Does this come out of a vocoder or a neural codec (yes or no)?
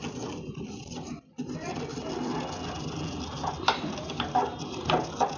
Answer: no